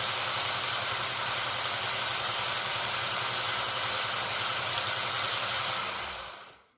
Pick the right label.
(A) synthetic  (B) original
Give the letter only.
B